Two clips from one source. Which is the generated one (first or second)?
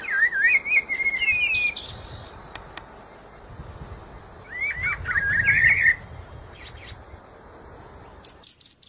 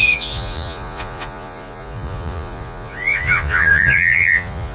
second